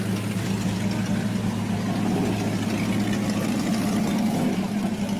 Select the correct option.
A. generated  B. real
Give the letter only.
B